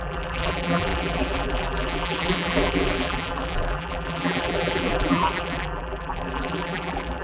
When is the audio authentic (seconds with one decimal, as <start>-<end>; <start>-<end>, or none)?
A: none